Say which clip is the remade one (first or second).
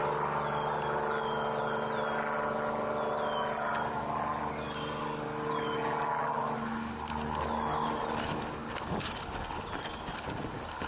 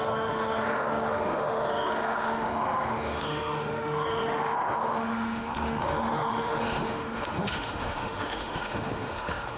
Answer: second